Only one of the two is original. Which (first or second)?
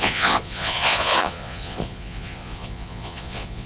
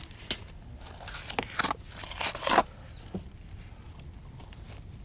second